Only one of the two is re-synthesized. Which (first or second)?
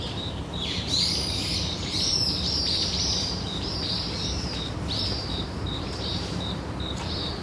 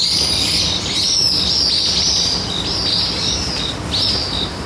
first